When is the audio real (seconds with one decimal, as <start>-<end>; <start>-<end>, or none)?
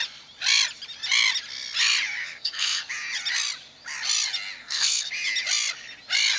0.0-2.2; 2.9-4.6; 5.1-6.4